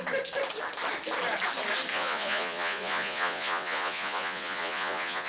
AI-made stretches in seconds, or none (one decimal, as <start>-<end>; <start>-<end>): 1.9-5.3